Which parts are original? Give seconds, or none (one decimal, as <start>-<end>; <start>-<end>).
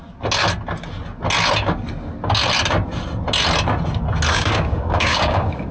0.0-4.3